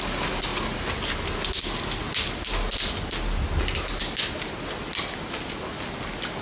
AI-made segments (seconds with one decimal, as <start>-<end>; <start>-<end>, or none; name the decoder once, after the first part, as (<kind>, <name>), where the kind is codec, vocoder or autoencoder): none